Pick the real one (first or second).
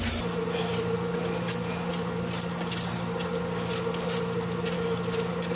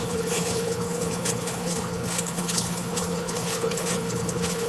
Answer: first